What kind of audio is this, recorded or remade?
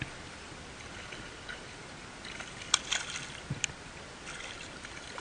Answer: recorded